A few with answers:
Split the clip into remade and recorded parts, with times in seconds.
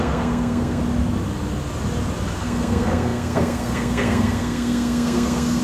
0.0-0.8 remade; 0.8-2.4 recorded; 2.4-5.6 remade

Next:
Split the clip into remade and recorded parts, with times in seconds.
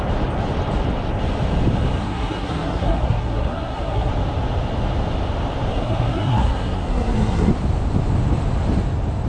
0.0-2.0 recorded; 2.0-4.1 remade; 4.1-5.7 recorded; 5.7-7.5 remade; 7.5-9.3 recorded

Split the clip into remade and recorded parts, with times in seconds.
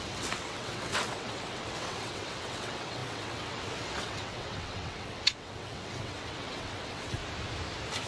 0.0-7.2 remade; 7.2-8.1 recorded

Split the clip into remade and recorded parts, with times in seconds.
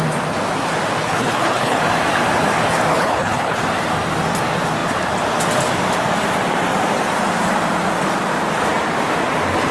0.0-1.0 recorded; 1.0-1.8 remade; 1.8-2.9 recorded; 2.9-3.6 remade; 3.6-9.7 recorded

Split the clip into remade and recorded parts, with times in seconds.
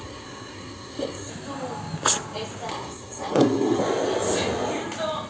0.0-1.3 remade; 1.3-2.7 recorded; 2.7-3.8 remade; 3.8-5.3 recorded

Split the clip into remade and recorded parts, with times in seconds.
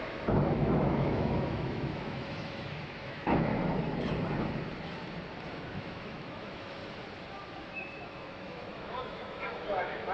0.0-3.5 remade; 3.5-5.5 recorded; 5.5-6.8 remade; 6.8-7.6 recorded; 7.6-10.1 remade